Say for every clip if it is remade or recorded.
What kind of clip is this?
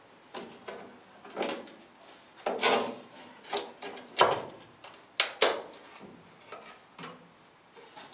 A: recorded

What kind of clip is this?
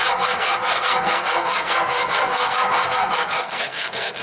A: remade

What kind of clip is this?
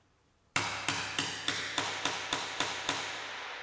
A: recorded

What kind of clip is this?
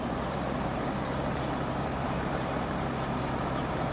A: remade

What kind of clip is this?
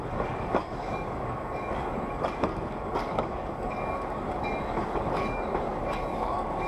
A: remade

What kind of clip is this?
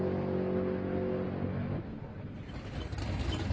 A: recorded